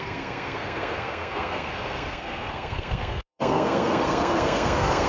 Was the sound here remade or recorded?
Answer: remade